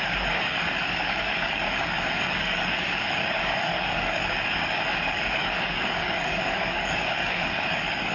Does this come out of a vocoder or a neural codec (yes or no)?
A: yes